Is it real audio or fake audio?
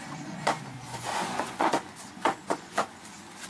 fake